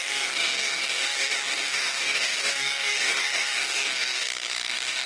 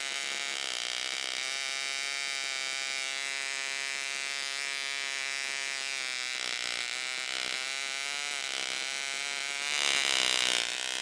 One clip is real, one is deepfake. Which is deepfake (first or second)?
first